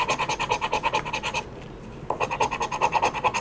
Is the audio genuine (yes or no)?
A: yes